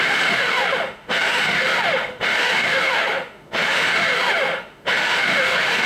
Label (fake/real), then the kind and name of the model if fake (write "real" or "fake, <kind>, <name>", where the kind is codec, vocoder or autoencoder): fake, autoencoder, DAC-VAE